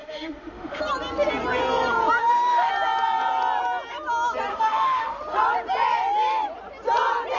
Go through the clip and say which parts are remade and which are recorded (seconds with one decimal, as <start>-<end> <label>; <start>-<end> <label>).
0.0-0.8 remade; 0.8-2.2 recorded; 2.2-2.7 remade; 2.7-4.5 recorded; 4.5-5.2 remade; 5.2-7.4 recorded